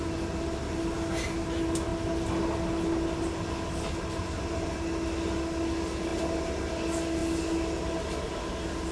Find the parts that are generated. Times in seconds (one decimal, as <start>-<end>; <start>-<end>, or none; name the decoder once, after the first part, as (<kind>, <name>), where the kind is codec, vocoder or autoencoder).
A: none